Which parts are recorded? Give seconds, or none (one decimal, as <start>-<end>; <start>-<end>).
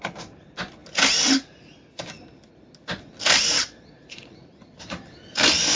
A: 0.0-3.6; 4.3-5.8